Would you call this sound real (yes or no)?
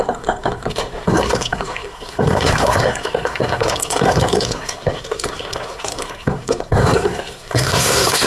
no